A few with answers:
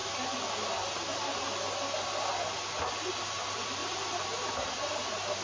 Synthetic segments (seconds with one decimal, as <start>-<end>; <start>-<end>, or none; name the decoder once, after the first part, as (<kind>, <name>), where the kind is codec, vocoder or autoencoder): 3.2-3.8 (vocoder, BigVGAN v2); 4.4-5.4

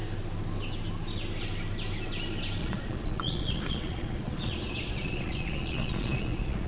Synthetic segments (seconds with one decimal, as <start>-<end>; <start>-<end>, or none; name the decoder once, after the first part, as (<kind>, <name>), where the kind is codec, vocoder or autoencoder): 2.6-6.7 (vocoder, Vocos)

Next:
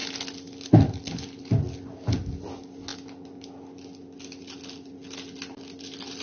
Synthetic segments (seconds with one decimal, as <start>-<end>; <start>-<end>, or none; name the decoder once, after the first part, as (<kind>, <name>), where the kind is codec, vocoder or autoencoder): none

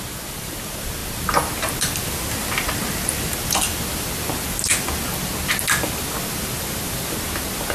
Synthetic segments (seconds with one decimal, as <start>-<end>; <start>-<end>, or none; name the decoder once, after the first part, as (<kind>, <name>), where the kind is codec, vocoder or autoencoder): none

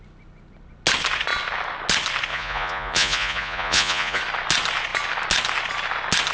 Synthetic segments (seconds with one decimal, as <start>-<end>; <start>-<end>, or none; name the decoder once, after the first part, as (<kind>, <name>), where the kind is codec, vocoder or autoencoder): 2.3-4.2 (vocoder, Vocos)

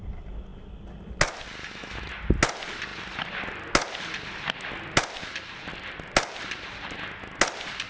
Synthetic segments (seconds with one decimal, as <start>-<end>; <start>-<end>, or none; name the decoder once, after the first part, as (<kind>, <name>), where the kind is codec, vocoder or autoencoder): 1.6-2.1 (autoencoder, DAC-VAE)

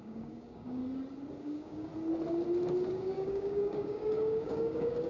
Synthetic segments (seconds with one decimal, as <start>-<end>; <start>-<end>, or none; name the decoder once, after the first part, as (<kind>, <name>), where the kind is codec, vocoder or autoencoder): 0.0-0.8 (codec, DAC); 1.4-1.9; 2.9-5.1

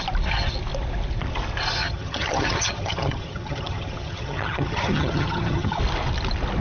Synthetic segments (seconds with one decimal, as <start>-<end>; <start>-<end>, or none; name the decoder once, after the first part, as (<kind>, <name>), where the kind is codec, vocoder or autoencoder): 1.8-5.8 (vocoder, HiFi-GAN)